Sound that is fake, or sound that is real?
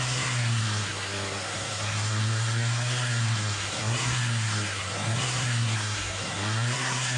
fake